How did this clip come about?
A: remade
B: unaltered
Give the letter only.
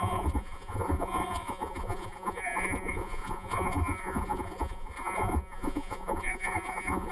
A